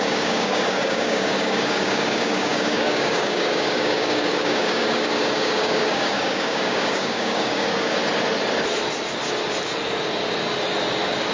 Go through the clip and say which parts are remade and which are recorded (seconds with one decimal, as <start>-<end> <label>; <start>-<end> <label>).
0.0-8.0 remade; 8.0-11.3 recorded